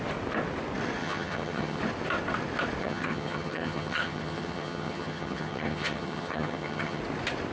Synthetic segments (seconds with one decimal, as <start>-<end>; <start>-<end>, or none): 1.0-1.8; 2.8-7.0